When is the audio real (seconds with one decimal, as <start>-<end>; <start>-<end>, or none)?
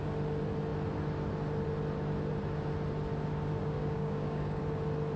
0.0-3.6; 4.6-5.2